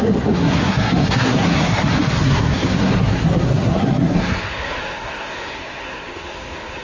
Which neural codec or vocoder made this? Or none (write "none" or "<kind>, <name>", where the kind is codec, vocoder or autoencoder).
codec, SNAC